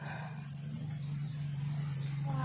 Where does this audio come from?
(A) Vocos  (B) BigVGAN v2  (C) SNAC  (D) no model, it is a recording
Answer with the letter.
D